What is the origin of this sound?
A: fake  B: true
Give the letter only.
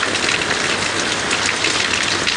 B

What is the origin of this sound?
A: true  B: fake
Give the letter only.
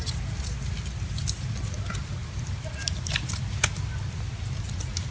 A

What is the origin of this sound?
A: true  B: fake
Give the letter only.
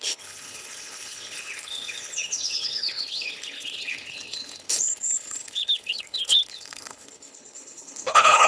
B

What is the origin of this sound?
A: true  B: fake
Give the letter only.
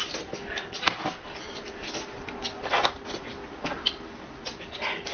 A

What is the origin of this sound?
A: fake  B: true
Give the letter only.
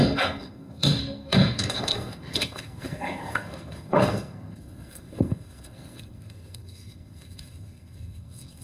A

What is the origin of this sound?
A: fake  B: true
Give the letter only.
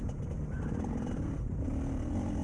B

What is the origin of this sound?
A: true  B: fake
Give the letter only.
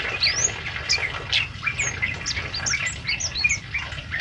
A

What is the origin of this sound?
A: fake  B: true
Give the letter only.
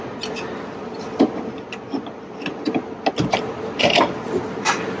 B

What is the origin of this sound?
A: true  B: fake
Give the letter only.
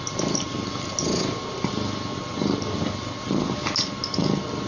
A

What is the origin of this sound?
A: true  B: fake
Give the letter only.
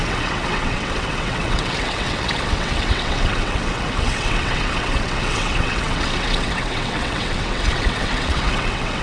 B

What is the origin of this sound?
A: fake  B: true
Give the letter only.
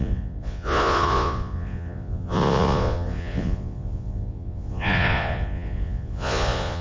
A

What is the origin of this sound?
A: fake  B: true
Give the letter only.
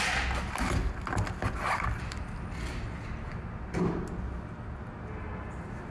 B